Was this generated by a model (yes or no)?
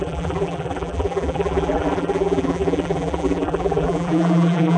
yes